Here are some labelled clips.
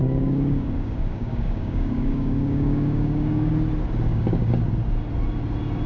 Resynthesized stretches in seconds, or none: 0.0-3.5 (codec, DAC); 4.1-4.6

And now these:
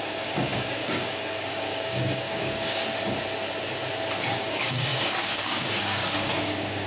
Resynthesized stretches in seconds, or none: 0.0-2.8 (codec, DAC); 4.3-6.9